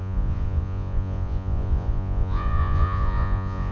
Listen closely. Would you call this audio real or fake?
fake